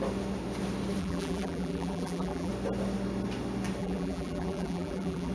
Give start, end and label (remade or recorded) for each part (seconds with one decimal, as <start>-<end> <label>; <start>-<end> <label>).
0.0-1.0 recorded; 1.0-2.5 remade; 2.5-3.8 recorded; 3.8-5.3 remade